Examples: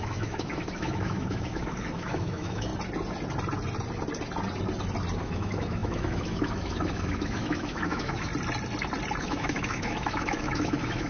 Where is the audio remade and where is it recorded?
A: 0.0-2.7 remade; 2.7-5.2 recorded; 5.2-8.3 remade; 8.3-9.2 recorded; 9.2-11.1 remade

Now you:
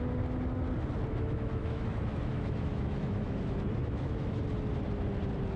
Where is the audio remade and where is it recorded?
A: 0.0-1.1 recorded; 1.1-4.4 remade; 4.4-5.6 recorded

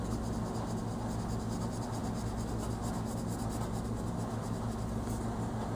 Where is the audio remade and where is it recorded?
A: 0.0-5.7 recorded

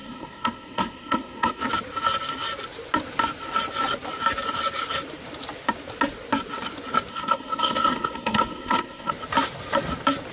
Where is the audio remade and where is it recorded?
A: 0.0-1.6 remade; 1.6-7.1 recorded; 7.1-9.1 remade; 9.1-10.3 recorded

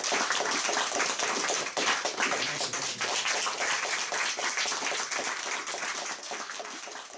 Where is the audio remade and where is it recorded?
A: 0.0-6.2 recorded; 6.2-6.8 remade; 6.8-7.2 recorded

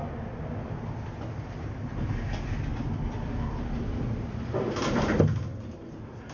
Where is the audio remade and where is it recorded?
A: 0.0-6.3 recorded

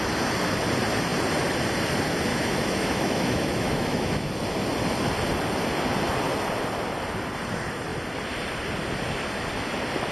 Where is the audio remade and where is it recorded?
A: 0.0-2.3 recorded; 2.3-4.3 remade; 4.3-10.1 recorded